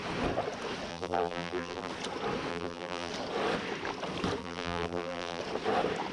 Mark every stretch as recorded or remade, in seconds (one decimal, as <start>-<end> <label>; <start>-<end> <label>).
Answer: 0.0-0.9 recorded; 0.9-1.9 remade; 1.9-2.5 recorded; 2.5-3.1 remade; 3.1-4.4 recorded; 4.4-5.4 remade; 5.4-6.1 recorded